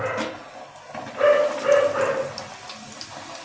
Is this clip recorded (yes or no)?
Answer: yes